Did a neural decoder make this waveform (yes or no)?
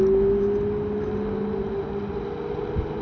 no